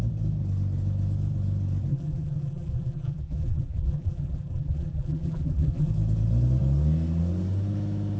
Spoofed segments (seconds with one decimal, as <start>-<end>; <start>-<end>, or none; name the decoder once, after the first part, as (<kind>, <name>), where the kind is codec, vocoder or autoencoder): 1.9-5.9 (vocoder, BigVGAN v2)